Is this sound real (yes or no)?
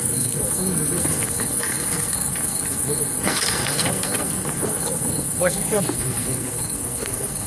no